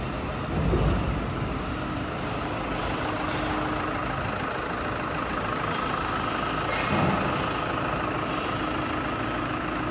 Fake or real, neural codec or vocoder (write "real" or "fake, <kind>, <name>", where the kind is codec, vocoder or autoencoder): real